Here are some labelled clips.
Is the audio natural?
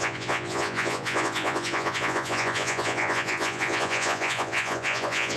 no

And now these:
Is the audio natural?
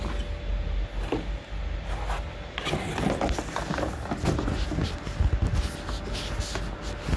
yes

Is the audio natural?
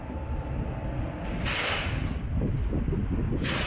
yes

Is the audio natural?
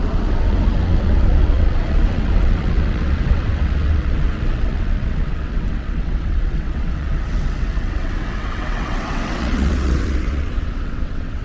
no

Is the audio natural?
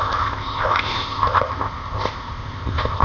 no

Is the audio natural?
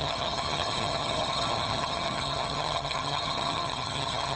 no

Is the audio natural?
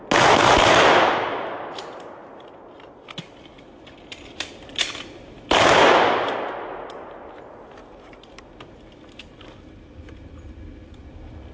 yes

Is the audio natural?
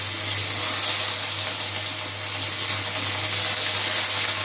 yes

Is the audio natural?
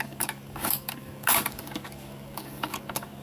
no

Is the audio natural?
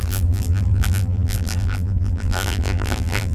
no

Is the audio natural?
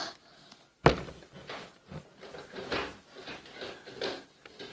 yes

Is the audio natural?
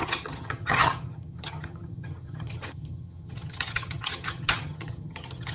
no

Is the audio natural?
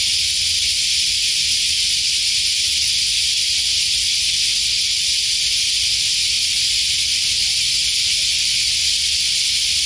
yes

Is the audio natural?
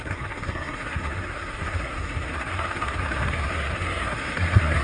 no